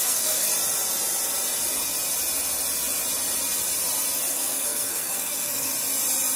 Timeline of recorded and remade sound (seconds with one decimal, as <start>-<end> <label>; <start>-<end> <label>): 0.0-0.5 remade; 0.5-4.3 recorded; 4.3-5.7 remade; 5.7-6.4 recorded